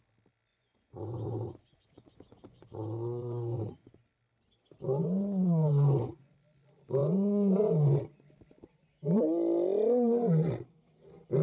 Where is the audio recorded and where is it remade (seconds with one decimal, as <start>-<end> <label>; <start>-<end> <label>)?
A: 0.0-0.5 recorded; 0.5-4.0 remade; 4.0-5.0 recorded; 5.0-6.3 remade; 6.3-7.0 recorded; 7.0-8.0 remade; 8.0-11.4 recorded